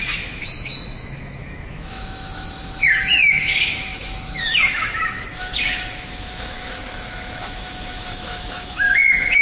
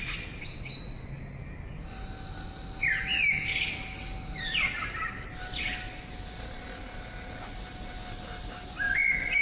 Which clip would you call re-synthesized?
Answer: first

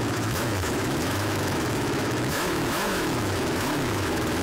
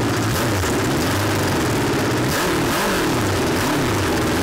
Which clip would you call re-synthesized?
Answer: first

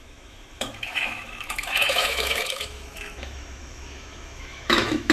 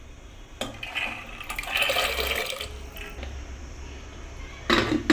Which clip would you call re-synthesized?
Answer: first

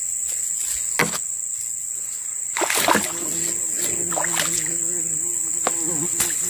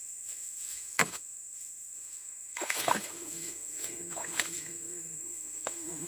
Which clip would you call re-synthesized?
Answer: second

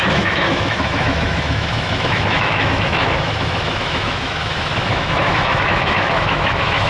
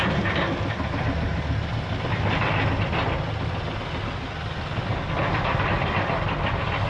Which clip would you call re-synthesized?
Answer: first